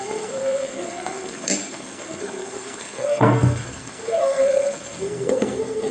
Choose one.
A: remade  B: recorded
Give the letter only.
A